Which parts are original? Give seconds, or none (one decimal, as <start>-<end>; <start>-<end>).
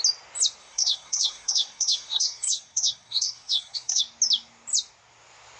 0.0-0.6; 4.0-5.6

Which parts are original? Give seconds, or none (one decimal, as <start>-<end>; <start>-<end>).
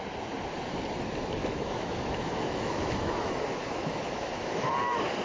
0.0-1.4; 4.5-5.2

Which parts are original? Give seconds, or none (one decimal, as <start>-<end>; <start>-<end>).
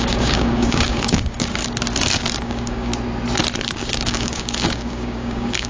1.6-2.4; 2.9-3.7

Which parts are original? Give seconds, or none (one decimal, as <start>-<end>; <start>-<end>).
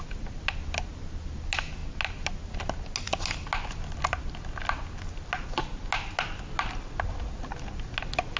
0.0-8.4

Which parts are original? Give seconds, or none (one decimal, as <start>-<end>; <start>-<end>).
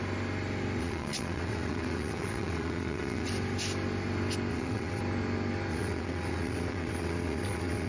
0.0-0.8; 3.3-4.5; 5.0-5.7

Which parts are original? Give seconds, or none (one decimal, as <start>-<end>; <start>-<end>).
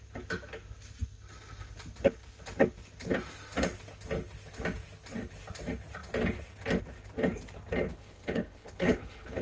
0.0-7.9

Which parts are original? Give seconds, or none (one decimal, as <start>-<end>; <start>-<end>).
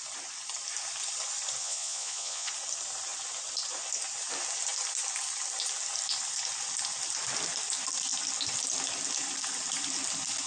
0.0-1.6; 2.5-10.5